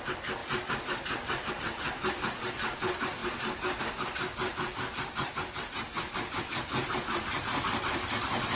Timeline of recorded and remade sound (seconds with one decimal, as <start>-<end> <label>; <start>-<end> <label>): 0.0-8.6 recorded